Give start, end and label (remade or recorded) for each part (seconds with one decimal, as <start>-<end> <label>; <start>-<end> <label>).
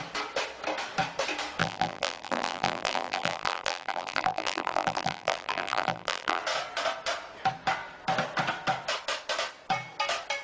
0.0-1.6 recorded; 1.6-6.4 remade; 6.4-10.4 recorded